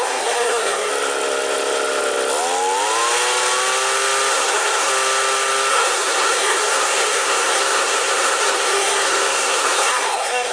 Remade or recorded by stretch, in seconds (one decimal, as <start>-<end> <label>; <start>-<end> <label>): 0.0-0.9 remade; 0.9-4.3 recorded; 4.3-4.9 remade; 4.9-5.7 recorded; 5.7-10.5 remade